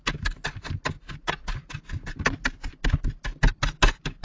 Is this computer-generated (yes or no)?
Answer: no